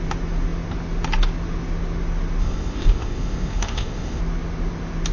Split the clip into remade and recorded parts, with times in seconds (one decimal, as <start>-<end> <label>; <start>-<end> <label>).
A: 0.0-2.4 recorded; 2.4-4.2 remade; 4.2-5.1 recorded